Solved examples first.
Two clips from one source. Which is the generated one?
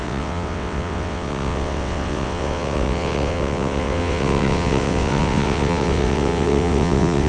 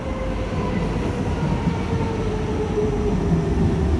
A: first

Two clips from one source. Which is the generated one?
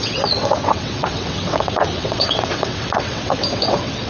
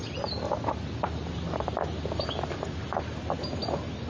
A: first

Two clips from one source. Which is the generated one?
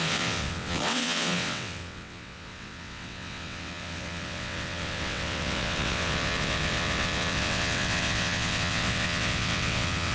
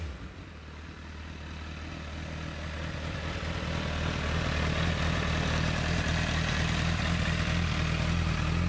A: first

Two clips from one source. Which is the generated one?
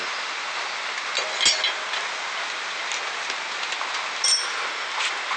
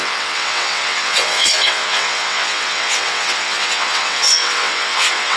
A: second